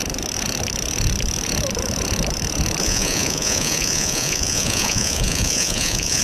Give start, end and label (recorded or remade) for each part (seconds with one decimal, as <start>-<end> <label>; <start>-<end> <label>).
0.0-2.8 recorded; 2.8-6.2 remade